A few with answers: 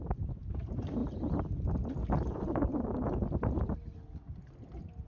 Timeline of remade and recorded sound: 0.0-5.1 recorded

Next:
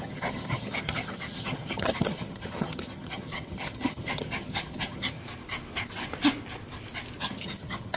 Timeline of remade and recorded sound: 0.0-5.2 remade; 5.2-7.2 recorded; 7.2-8.0 remade

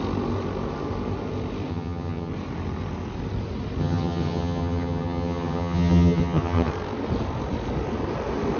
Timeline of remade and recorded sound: 0.0-1.7 recorded; 1.7-2.3 remade; 2.3-3.8 recorded; 3.8-6.7 remade; 6.7-8.6 recorded

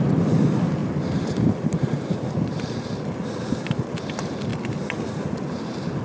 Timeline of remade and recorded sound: 0.0-6.0 recorded

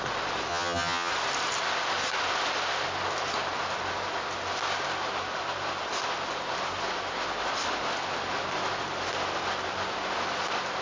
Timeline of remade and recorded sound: 0.0-0.5 recorded; 0.5-1.1 remade; 1.1-10.8 recorded

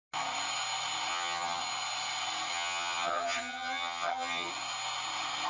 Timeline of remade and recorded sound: 0.0-1.1 recorded; 1.1-1.6 remade; 1.6-2.5 recorded; 2.5-4.5 remade; 4.5-5.5 recorded

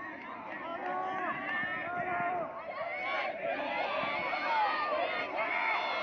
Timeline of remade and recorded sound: 0.0-6.0 recorded